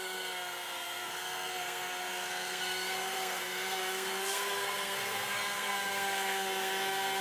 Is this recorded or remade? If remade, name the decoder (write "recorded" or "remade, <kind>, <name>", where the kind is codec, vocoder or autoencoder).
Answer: remade, codec, SNAC